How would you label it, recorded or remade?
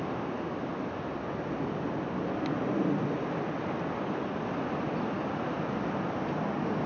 recorded